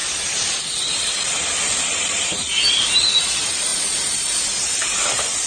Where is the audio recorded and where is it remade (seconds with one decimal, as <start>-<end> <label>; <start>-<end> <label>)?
0.0-5.5 recorded